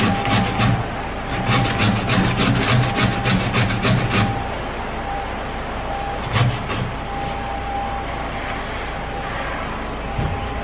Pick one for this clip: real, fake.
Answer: real